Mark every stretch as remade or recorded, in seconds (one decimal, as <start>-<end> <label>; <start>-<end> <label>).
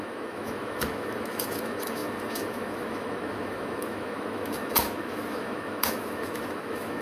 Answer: 0.0-7.0 remade